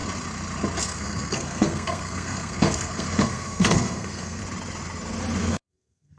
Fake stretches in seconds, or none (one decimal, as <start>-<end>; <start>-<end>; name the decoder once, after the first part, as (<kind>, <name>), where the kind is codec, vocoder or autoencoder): 0.8-4.4 (codec, SNAC); 5.4-6.2